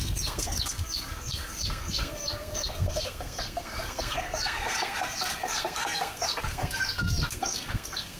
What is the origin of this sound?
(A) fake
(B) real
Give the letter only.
A